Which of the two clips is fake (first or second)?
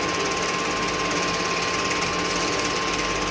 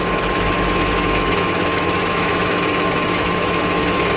second